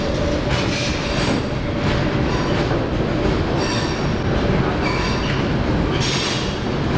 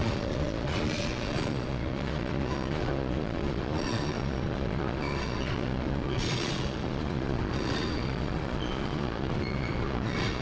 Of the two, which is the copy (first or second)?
second